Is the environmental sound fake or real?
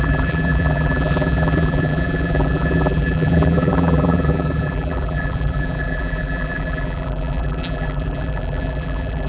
fake